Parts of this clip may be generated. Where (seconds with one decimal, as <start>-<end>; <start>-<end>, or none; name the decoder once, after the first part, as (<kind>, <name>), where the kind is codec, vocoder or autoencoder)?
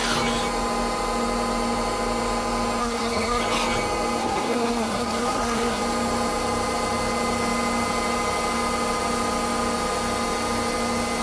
2.8-3.4 (codec, SNAC); 4.2-5.8